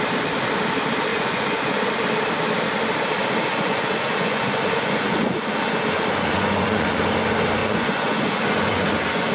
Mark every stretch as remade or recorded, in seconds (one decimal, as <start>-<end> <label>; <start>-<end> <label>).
0.0-1.1 recorded; 1.1-1.9 remade; 1.9-3.5 recorded; 3.5-7.0 remade; 7.0-7.6 recorded; 7.6-9.3 remade